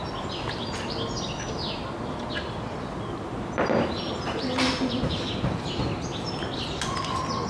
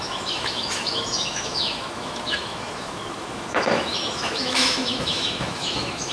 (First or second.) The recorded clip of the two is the first